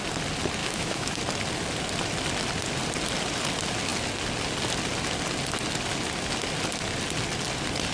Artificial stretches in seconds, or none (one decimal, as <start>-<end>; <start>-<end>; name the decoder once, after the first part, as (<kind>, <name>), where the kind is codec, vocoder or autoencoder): 0.6-1.2 (autoencoder, DAC-VAE)